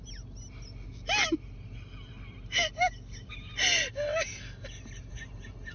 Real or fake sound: real